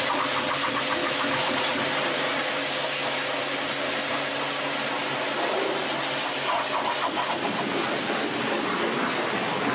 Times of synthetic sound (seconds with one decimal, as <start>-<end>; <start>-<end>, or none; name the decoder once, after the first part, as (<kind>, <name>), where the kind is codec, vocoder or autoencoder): 1.0-1.5 (autoencoder, DAC-VAE)